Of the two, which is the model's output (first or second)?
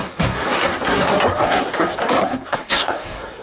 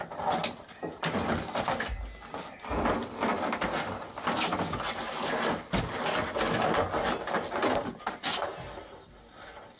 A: first